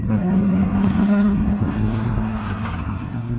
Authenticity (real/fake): fake